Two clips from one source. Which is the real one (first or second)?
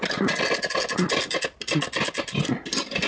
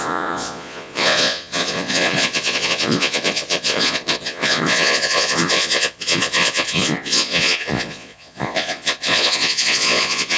first